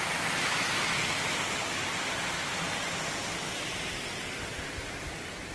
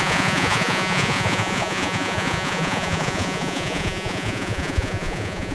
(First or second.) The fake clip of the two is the second